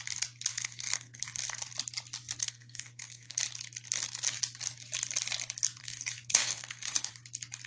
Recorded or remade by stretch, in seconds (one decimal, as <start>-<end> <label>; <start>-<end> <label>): 0.0-0.5 recorded; 0.5-1.2 remade; 1.2-2.4 recorded; 2.4-3.4 remade; 3.4-5.8 recorded; 5.8-7.1 remade; 7.1-7.7 recorded